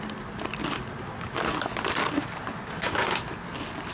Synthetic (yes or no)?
no